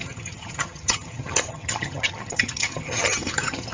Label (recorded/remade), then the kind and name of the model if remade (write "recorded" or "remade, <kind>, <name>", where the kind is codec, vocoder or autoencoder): remade, vocoder, HiFi-GAN